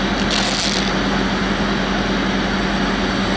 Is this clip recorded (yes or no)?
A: yes